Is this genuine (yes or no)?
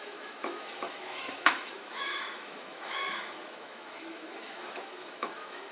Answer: no